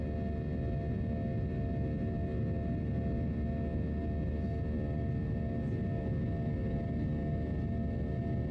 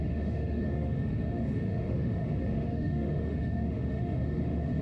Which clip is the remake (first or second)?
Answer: second